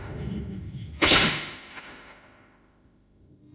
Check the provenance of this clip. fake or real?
fake